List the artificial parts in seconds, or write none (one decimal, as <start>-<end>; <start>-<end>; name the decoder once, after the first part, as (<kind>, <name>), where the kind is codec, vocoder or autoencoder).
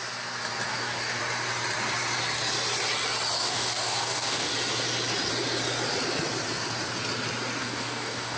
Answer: 0.7-1.2 (codec, DAC); 3.4-4.5; 7.6-8.4